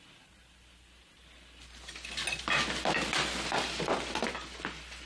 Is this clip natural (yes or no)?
yes